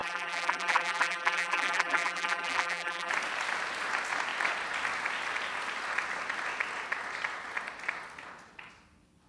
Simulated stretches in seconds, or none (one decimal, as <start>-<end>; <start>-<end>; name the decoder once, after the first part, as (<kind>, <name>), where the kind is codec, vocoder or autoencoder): 0.0-3.1 (vocoder, BigVGAN v2)